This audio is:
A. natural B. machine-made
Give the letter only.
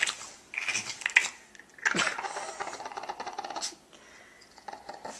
A